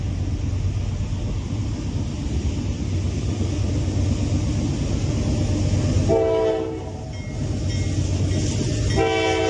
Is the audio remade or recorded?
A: recorded